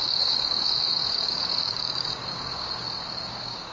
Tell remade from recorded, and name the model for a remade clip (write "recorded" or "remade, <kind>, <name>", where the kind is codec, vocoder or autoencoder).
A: remade, codec, DAC